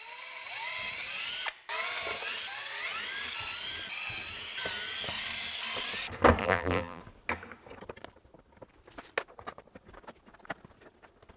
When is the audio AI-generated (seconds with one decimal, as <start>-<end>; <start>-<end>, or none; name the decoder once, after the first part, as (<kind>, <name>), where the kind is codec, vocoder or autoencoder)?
6.4-7.0 (vocoder, BigVGAN v2)